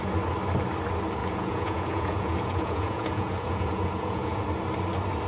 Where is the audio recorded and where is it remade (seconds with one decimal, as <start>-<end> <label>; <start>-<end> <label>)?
0.0-1.2 recorded; 1.2-4.4 remade; 4.4-5.3 recorded

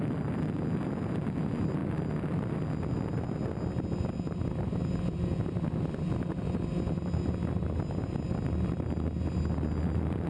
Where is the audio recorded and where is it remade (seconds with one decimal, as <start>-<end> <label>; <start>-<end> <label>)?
0.0-10.3 recorded

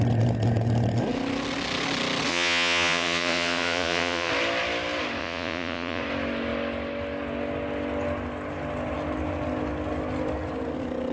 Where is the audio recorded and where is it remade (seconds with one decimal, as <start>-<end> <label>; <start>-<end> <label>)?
0.0-2.3 recorded; 2.3-4.3 remade; 4.3-5.2 recorded; 5.2-6.0 remade; 6.0-11.1 recorded

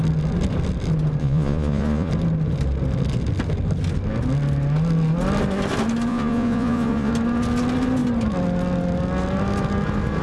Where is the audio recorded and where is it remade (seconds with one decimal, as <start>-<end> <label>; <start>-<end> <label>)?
0.0-1.2 recorded; 1.2-2.1 remade; 2.1-6.1 recorded; 6.1-7.1 remade; 7.1-10.2 recorded

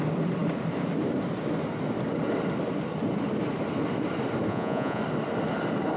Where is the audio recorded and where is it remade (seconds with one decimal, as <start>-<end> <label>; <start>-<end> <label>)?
0.0-4.5 recorded; 4.5-5.0 remade; 5.0-6.0 recorded

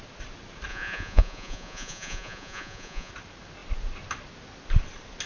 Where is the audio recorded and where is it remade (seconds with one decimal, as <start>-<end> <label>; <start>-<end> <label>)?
0.0-0.7 recorded; 0.7-3.1 remade; 3.1-5.3 recorded